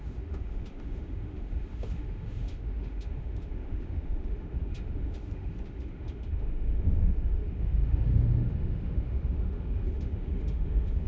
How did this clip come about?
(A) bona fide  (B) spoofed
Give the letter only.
B